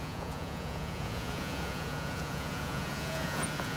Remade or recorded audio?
remade